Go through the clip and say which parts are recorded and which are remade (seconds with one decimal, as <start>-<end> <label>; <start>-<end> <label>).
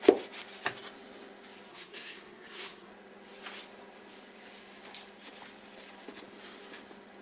0.0-1.7 recorded; 1.7-2.9 remade; 2.9-7.2 recorded